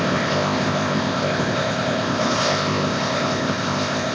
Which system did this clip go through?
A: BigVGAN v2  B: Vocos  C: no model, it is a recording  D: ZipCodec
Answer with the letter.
D